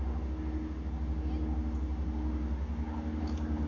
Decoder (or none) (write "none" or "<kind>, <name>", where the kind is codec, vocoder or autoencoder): none